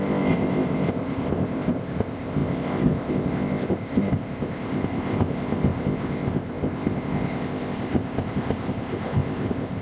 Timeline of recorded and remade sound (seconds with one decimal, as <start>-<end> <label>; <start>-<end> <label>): 0.0-9.8 remade